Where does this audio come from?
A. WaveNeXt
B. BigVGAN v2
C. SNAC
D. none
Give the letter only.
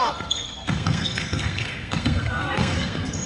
C